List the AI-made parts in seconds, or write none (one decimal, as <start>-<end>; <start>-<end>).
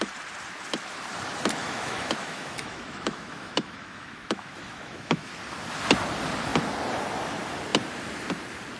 1.6-5.3